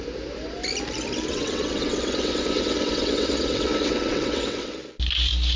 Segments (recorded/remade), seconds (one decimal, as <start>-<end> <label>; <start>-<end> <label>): 0.0-1.3 recorded; 1.3-4.7 remade; 4.7-5.6 recorded